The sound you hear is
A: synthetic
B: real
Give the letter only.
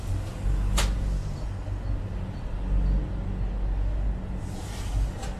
B